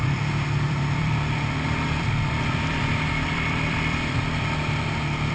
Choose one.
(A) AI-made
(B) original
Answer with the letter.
A